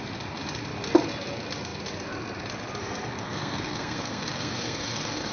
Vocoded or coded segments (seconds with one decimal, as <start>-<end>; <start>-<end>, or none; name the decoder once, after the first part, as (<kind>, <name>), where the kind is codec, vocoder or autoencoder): 3.1-5.3 (codec, SNAC)